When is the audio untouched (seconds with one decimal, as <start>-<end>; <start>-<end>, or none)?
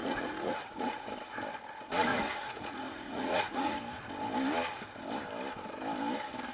1.1-2.1; 3.8-6.5